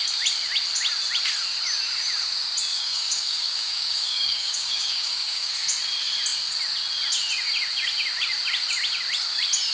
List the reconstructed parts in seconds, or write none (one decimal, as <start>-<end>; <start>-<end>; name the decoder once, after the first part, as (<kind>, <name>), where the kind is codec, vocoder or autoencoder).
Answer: 2.7-5.5 (codec, DAC)